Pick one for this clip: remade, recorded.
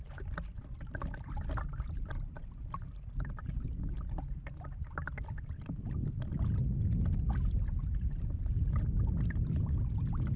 recorded